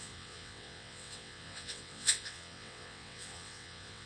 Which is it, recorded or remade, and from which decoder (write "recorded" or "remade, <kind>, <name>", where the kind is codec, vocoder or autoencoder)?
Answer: remade, vocoder, WaveNeXt